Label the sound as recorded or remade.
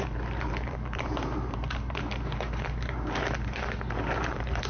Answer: remade